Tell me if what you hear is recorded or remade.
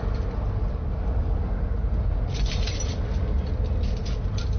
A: recorded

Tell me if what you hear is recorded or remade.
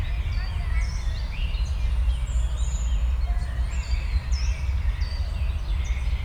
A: recorded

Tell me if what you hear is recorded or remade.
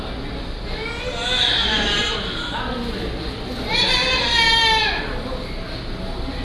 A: recorded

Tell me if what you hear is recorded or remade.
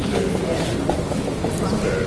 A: recorded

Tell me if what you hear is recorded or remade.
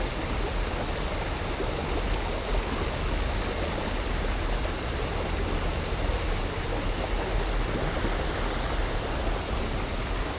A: recorded